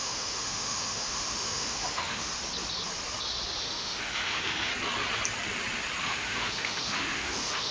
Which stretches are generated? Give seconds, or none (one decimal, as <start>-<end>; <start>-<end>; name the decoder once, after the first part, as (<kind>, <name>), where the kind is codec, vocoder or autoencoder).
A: 0.0-2.3 (autoencoder, DAC-VAE); 3.6-4.7; 6.0-7.7